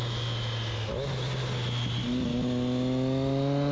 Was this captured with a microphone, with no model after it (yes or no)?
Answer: yes